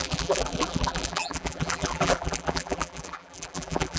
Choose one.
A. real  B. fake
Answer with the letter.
B